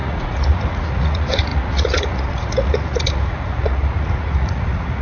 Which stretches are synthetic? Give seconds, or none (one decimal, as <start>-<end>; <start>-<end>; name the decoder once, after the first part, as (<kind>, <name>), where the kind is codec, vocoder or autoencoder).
0.0-5.0 (vocoder, Vocos)